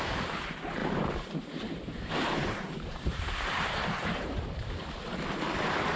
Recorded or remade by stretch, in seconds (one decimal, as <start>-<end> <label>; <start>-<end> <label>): 0.0-0.8 recorded; 0.8-4.4 remade; 4.4-6.0 recorded